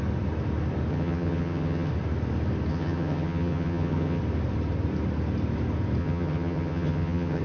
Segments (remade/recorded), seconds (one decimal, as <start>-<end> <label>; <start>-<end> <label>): 0.0-0.9 recorded; 0.9-1.9 remade; 1.9-2.7 recorded; 2.7-4.2 remade; 4.2-6.0 recorded; 6.0-7.4 remade